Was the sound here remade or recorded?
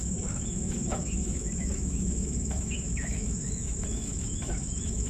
remade